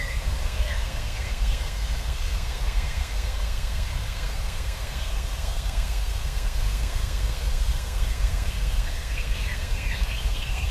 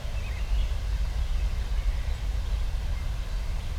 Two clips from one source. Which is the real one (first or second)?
second